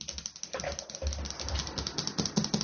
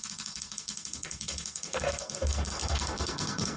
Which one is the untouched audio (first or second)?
first